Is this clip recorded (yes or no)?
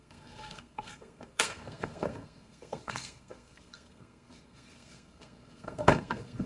no